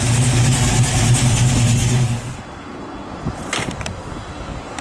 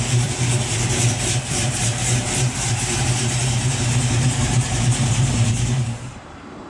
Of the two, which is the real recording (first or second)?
first